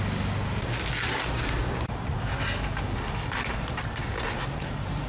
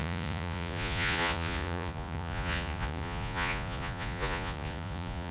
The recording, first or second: first